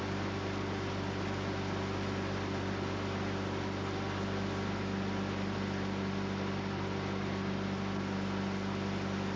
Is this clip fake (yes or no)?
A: no